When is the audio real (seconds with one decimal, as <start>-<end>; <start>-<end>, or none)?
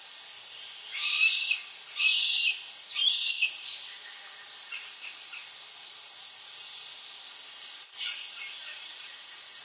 0.0-8.6